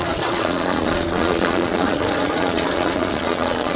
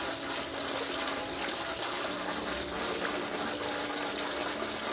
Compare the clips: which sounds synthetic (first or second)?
first